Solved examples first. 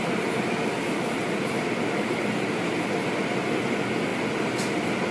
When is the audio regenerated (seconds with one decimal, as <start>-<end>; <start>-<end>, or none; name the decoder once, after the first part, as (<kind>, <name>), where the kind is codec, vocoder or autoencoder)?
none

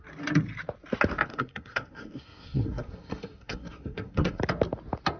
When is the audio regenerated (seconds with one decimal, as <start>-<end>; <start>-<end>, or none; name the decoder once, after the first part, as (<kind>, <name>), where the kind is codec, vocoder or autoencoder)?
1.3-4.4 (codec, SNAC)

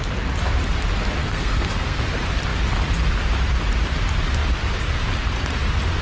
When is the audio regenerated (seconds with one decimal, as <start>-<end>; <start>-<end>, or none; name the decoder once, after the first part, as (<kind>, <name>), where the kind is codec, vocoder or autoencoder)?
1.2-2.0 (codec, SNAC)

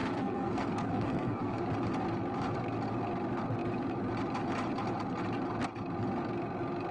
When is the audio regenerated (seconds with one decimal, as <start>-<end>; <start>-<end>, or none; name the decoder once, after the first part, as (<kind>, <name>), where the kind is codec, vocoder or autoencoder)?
0.0-1.6 (codec, SNAC)

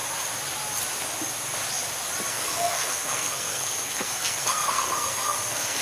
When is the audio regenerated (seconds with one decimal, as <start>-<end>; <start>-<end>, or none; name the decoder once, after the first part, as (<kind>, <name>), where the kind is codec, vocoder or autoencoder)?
2.3-5.8 (codec, SNAC)

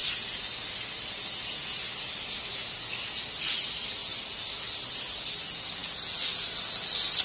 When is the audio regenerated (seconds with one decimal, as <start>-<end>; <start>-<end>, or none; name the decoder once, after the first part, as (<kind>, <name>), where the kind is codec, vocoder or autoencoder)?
none

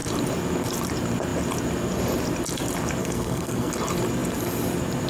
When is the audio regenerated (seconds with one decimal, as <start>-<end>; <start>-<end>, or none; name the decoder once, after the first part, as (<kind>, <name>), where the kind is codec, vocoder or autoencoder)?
3.0-3.7 (codec, SNAC)

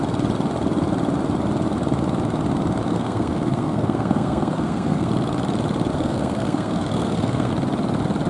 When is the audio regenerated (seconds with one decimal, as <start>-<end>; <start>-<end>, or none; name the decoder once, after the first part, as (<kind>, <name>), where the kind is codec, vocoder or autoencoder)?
2.9-5.1 (codec, SNAC); 5.9-7.5